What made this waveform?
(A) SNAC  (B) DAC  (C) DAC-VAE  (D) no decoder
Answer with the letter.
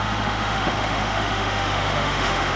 C